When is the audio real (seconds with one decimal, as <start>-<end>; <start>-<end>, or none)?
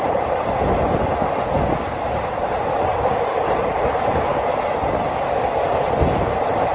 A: 1.1-1.9; 2.9-3.5; 4.3-6.0